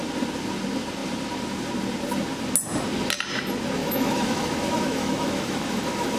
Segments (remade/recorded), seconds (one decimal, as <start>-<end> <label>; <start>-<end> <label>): 0.0-3.8 recorded; 3.8-6.2 remade